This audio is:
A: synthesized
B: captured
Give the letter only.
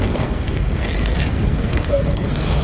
A